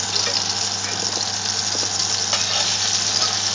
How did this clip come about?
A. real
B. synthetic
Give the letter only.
A